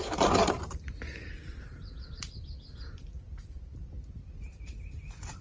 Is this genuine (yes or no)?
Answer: yes